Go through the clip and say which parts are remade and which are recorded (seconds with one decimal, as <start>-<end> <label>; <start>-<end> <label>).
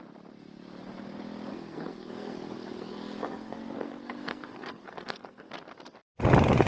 0.0-1.5 recorded; 1.5-5.5 remade; 5.5-6.7 recorded